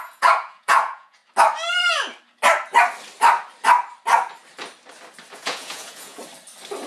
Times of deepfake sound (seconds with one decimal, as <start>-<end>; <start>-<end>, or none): 0.0-1.2; 5.3-6.2